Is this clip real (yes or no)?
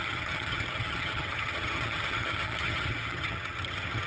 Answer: no